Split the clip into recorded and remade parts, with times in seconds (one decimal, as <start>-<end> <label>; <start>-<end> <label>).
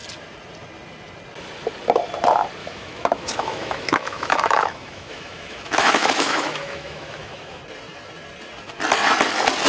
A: 0.0-2.6 recorded; 2.6-7.6 remade; 7.6-9.7 recorded